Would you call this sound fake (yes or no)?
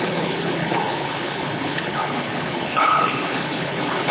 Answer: yes